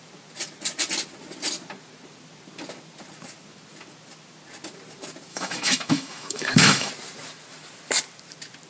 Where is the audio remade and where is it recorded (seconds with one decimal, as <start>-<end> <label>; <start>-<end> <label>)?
0.0-5.3 recorded; 5.3-6.9 remade; 6.9-8.7 recorded